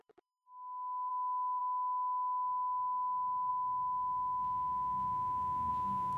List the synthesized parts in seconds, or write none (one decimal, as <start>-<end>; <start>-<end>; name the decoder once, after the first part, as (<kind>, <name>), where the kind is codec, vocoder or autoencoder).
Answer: 0.0-1.1 (autoencoder, DAC-VAE); 1.6-6.2